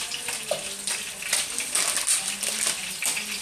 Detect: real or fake real